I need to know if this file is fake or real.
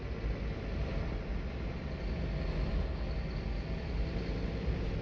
real